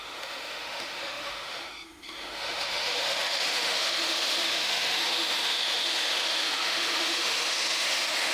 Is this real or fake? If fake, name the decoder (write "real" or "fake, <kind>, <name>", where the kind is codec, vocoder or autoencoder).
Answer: fake, autoencoder, DAC-VAE